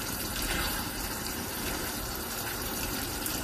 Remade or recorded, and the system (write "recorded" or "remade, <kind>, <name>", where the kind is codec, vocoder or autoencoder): remade, vocoder, BigVGAN v2